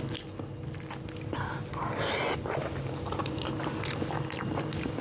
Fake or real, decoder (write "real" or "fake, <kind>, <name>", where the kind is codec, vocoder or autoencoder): real